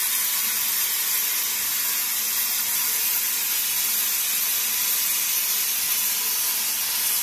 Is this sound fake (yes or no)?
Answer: no